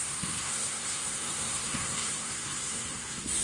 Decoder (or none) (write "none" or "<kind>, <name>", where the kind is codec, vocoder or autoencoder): codec, SNAC